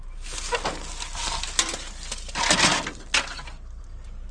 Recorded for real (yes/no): yes